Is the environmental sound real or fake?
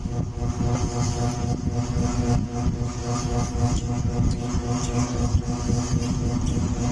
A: real